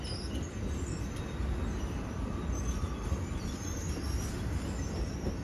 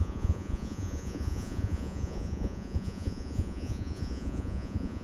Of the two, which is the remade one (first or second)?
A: second